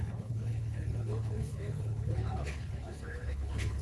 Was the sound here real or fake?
fake